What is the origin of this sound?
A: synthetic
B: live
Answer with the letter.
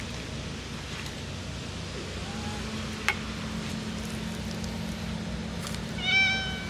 B